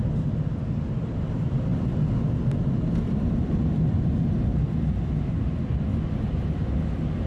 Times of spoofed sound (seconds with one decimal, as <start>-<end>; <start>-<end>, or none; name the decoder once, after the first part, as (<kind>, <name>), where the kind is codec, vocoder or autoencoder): none